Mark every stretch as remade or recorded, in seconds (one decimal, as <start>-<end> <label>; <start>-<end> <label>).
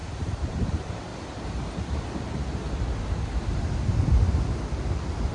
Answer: 0.0-1.1 remade; 1.1-4.3 recorded; 4.3-5.3 remade